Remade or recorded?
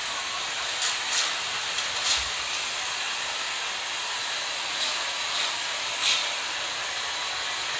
recorded